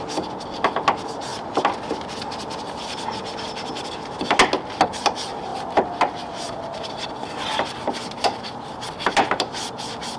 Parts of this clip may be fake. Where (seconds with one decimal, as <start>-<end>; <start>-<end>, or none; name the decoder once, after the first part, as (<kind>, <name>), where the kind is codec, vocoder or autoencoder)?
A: 1.3-2.8 (vocoder, BigVGAN v2); 5.5-9.7